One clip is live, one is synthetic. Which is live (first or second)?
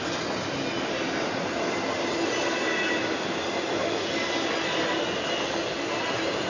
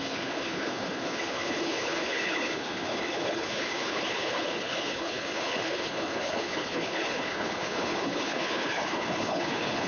first